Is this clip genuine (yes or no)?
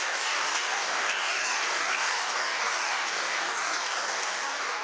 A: no